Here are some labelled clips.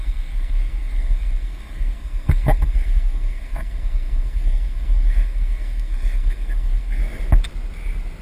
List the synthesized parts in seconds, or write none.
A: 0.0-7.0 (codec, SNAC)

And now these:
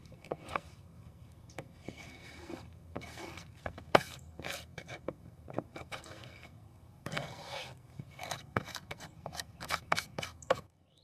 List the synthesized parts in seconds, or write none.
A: 0.0-11.0 (codec, SNAC)

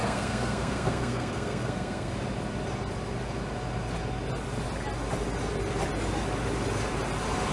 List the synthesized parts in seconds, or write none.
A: 0.0-2.1 (codec, SNAC)